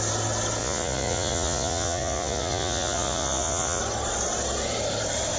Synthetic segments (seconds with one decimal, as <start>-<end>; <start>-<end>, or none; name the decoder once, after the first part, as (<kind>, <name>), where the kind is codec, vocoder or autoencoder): 0.6-3.8 (vocoder, Vocos)